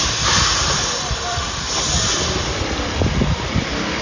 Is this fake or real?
fake